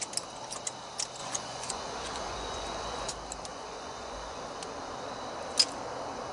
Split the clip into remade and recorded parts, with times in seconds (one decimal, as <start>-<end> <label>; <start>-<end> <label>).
0.0-1.2 recorded; 1.2-3.1 remade; 3.1-3.5 recorded; 3.5-4.4 remade; 4.4-6.3 recorded

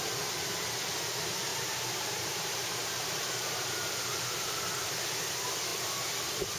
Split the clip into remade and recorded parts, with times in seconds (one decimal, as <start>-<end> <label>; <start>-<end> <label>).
0.0-1.5 recorded; 1.5-4.6 remade; 4.6-6.6 recorded

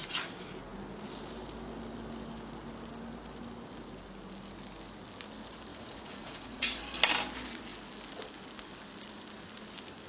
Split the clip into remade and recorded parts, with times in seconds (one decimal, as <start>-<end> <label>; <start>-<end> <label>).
0.0-5.7 recorded; 5.7-6.8 remade; 6.8-10.1 recorded